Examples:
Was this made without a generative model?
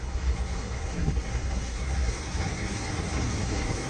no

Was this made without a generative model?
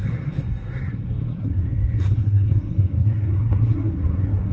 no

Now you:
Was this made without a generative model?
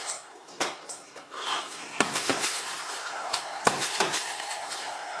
no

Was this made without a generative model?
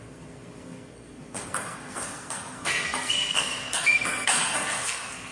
no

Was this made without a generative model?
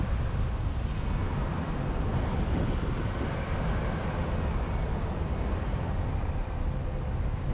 yes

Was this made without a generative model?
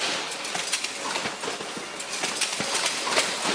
yes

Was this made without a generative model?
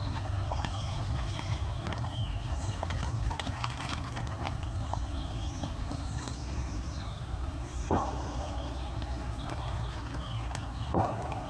no